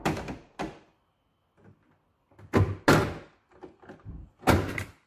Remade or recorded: recorded